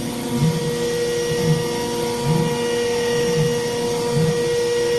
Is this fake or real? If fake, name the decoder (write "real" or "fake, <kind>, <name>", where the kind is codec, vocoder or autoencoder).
real